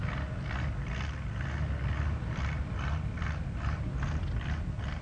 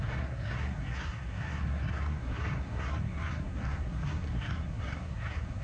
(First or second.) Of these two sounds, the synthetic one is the second